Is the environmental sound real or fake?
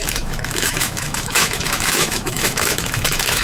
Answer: fake